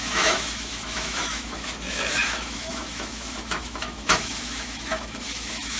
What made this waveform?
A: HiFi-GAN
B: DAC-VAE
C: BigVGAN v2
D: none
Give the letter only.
B